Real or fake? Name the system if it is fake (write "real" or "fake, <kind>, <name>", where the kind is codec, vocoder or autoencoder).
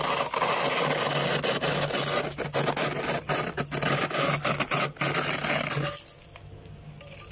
real